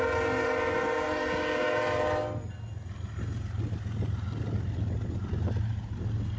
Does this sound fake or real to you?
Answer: real